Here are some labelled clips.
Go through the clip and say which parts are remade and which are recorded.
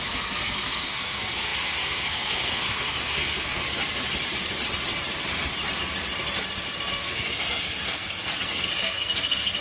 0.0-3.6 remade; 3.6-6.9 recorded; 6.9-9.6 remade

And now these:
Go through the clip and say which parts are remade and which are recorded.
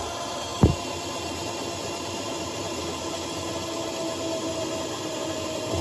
0.0-5.8 recorded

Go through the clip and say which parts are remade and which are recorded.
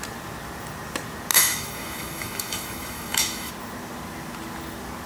0.0-1.3 recorded; 1.3-3.5 remade; 3.5-5.1 recorded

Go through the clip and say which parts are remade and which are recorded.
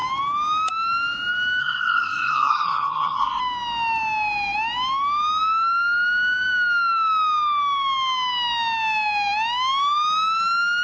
0.0-1.6 recorded; 1.6-3.4 remade; 3.4-10.8 recorded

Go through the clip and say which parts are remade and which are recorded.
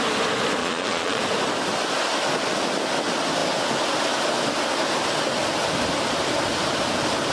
0.0-0.6 recorded; 0.6-1.2 remade; 1.2-7.3 recorded